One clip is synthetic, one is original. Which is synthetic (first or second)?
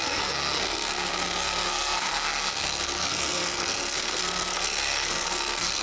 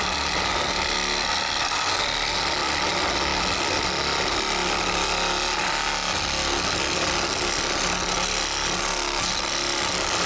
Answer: first